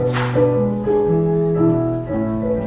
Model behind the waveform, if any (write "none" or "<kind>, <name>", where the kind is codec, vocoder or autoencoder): none